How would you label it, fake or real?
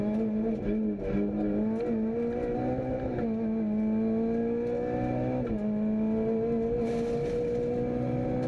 real